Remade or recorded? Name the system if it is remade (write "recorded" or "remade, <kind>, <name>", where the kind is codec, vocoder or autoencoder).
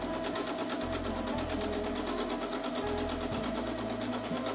recorded